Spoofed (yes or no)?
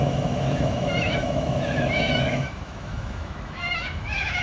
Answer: yes